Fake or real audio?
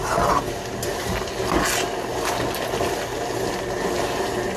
real